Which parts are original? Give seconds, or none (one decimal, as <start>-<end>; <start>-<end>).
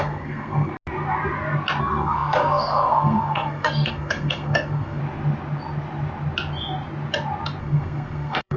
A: 0.7-1.8; 5.0-7.6